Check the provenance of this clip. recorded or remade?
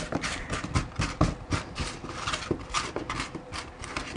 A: remade